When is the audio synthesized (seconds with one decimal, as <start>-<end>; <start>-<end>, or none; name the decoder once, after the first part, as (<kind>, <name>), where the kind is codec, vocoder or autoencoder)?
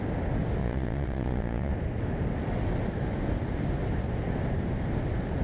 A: 0.6-1.7 (vocoder, Vocos)